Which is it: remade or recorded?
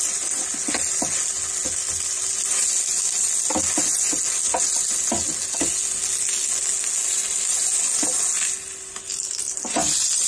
recorded